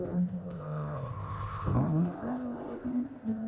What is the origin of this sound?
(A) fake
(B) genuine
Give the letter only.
A